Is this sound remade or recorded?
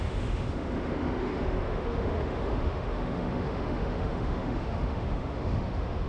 remade